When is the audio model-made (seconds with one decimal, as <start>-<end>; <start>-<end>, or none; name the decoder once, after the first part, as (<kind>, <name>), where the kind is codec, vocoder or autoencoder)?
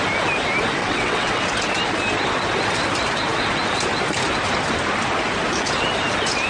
0.8-1.4 (vocoder, WaveNeXt)